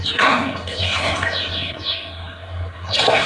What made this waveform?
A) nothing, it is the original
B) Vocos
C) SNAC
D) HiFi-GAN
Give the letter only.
C